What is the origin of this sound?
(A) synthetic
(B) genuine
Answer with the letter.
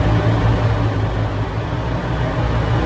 B